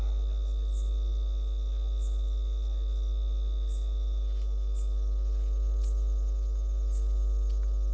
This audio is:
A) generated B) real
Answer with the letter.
B